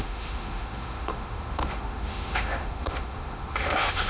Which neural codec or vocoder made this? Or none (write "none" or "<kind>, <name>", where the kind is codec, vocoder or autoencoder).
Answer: autoencoder, DAC-VAE